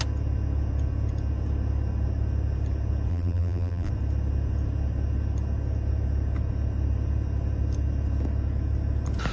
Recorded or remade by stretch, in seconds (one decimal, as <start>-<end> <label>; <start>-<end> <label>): 0.0-3.1 recorded; 3.1-3.9 remade; 3.9-9.3 recorded